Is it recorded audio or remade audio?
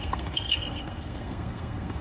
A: remade